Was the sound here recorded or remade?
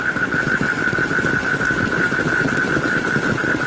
recorded